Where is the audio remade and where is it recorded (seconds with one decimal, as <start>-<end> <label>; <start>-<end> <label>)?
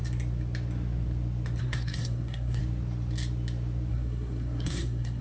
0.0-1.6 recorded; 1.6-2.6 remade; 2.6-3.9 recorded; 3.9-5.2 remade